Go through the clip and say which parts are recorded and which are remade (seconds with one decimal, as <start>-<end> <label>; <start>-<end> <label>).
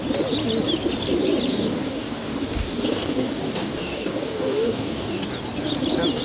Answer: 0.0-1.5 recorded; 1.5-5.2 remade; 5.2-6.2 recorded